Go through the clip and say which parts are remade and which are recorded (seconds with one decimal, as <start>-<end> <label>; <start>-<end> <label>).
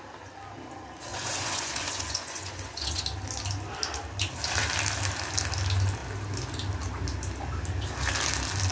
0.0-1.1 recorded; 1.1-3.0 remade; 3.0-8.7 recorded